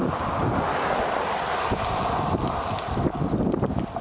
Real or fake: real